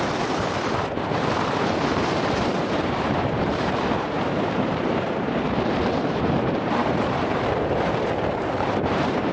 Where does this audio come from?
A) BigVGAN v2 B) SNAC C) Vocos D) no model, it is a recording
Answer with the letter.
A